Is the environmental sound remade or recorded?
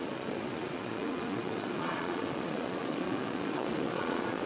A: remade